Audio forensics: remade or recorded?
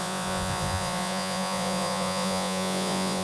remade